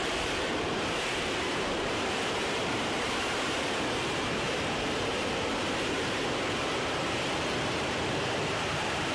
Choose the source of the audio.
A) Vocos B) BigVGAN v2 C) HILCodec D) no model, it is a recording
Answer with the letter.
B